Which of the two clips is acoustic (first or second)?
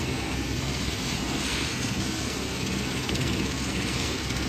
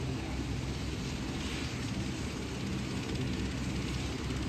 second